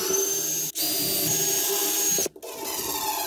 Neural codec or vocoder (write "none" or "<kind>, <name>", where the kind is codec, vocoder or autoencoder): none